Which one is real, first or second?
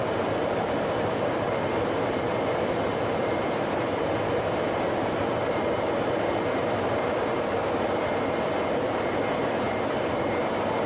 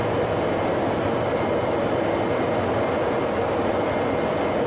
second